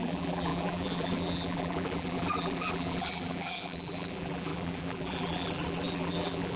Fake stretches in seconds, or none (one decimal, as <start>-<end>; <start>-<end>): 0.0-6.6